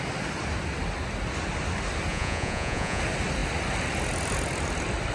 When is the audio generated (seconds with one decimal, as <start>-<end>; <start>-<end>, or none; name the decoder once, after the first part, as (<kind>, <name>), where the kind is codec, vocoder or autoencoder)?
2.1-3.0 (vocoder, Vocos)